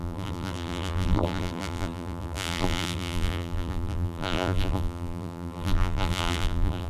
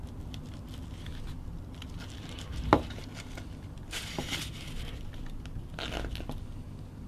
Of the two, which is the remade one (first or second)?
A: first